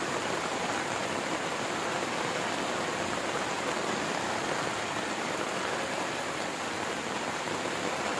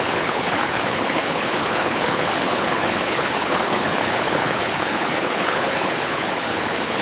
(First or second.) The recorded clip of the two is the first